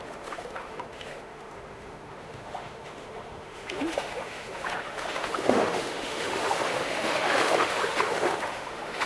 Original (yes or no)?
no